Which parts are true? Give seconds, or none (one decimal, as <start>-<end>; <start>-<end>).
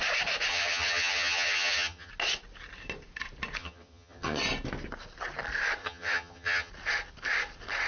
0.0-0.5; 2.1-3.6; 4.4-5.8; 6.7-7.9